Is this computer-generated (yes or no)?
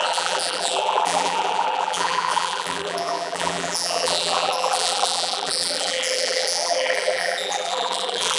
yes